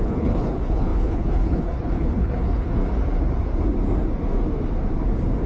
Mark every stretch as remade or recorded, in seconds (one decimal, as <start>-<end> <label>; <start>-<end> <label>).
0.0-2.8 remade; 2.8-5.5 recorded